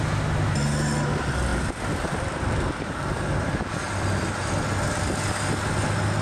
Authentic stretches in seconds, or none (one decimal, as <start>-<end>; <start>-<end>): 0.0-1.5; 4.3-6.2